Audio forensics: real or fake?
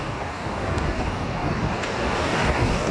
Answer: fake